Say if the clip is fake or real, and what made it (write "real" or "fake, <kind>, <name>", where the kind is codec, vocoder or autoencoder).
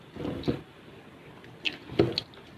real